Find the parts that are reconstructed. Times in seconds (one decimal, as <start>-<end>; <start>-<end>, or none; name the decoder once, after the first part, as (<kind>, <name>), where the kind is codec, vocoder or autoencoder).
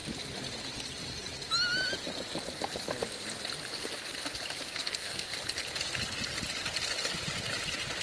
4.8-5.3 (codec, SNAC)